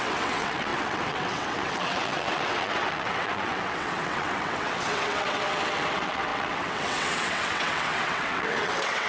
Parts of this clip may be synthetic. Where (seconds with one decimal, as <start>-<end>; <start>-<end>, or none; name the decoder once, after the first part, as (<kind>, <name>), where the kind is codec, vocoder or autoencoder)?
0.0-9.1 (vocoder, WaveNeXt)